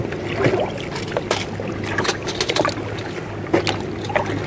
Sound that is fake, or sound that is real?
real